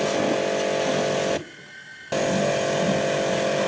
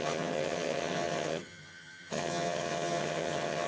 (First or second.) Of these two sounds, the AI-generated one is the second